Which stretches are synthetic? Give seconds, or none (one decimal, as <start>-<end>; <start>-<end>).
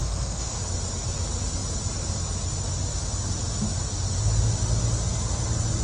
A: 0.0-0.5